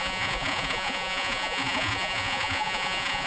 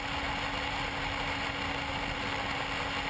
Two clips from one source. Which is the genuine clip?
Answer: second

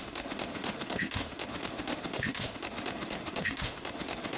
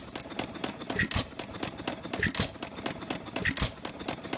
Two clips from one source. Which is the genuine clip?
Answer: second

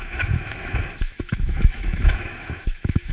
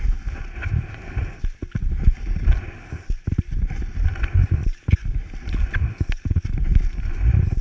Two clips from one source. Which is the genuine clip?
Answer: second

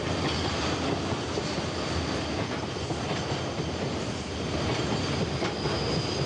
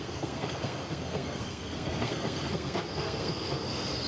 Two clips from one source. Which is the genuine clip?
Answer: first